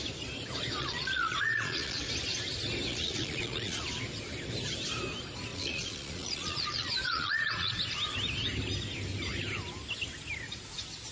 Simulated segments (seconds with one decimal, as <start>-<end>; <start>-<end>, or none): 0.8-2.0; 2.9-3.8; 5.5-7.8